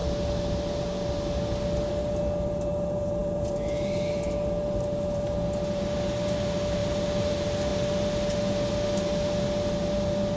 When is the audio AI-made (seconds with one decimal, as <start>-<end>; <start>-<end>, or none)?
none